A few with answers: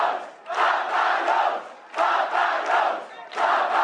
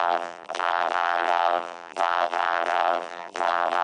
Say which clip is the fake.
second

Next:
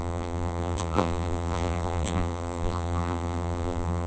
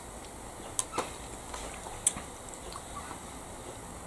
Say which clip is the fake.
first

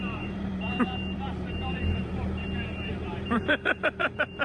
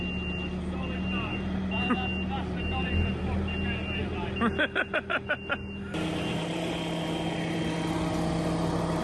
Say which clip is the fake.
first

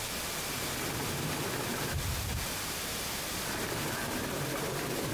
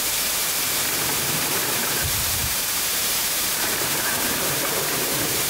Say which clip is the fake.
second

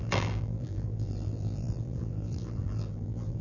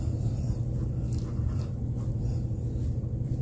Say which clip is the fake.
first